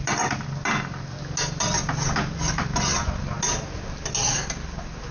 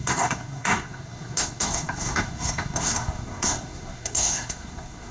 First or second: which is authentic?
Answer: first